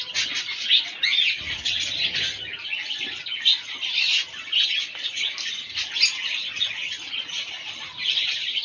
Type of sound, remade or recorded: recorded